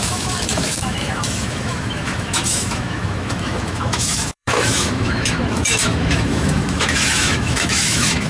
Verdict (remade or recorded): remade